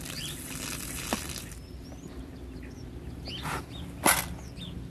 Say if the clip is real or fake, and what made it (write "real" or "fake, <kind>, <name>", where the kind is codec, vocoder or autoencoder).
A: real